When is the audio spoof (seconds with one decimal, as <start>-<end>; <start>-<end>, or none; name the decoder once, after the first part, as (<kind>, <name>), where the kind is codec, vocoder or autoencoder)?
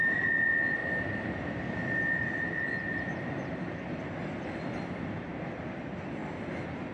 none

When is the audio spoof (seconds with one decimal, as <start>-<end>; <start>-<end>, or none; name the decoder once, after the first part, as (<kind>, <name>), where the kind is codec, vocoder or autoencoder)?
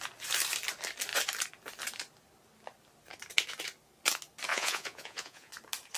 4.5-5.5 (vocoder, Vocos)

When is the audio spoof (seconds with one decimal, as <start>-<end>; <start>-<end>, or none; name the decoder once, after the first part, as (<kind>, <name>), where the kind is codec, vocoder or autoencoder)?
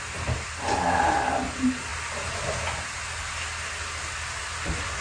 none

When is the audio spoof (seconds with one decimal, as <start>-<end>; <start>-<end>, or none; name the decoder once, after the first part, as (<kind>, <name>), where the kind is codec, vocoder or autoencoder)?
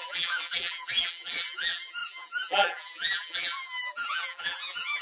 0.0-5.0 (vocoder, BigVGAN v2)